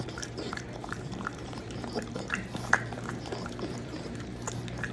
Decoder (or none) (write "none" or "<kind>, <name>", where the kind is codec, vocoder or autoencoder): vocoder, BigVGAN v2